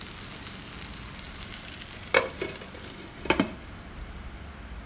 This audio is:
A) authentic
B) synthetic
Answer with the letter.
A